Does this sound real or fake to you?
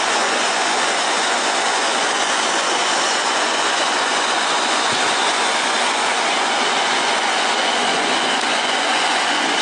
fake